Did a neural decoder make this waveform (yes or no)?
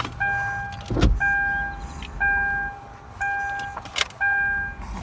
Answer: no